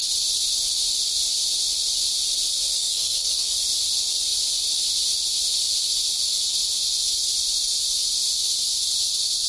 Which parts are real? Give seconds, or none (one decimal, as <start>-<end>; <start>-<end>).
0.0-2.7; 3.7-9.5

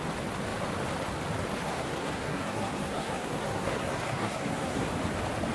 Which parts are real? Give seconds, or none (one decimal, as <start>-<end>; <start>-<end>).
0.0-1.6; 4.9-5.5

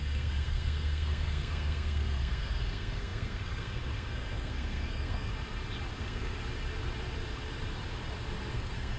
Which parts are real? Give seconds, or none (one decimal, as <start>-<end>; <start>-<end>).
5.3-6.0; 6.4-8.5

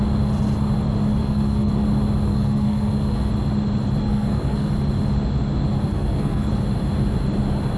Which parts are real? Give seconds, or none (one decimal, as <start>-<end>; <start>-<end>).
0.0-1.2; 1.7-2.3; 3.3-4.0; 4.7-5.9; 6.5-7.8

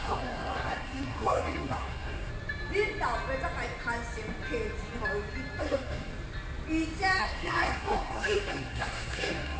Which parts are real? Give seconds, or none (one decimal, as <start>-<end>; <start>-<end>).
2.3-5.6; 6.1-7.2

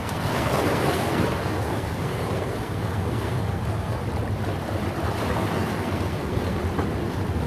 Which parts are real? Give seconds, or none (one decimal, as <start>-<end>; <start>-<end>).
4.0-5.3; 6.6-7.5

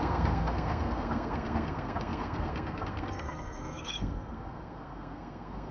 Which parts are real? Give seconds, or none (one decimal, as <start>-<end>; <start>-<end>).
none